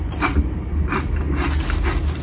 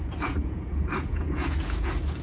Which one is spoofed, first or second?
second